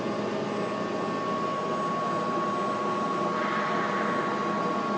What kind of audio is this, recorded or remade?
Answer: recorded